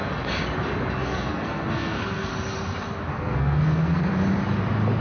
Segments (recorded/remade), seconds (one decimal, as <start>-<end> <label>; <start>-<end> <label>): 0.0-1.0 recorded; 1.0-2.3 remade; 2.3-3.1 recorded; 3.1-4.1 remade; 4.1-5.0 recorded